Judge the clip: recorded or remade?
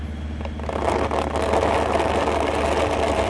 recorded